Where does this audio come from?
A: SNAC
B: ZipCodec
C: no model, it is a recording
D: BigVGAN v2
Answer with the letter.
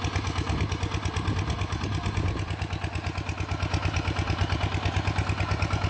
C